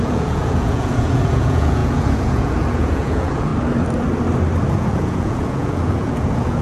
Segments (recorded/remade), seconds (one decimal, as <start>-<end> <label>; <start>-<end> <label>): 0.0-3.5 remade; 3.5-4.7 recorded; 4.7-6.6 remade